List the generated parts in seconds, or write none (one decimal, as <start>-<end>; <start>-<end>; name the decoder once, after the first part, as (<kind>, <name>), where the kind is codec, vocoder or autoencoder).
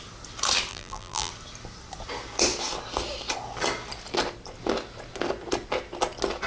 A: 0.7-1.3 (vocoder, BigVGAN v2)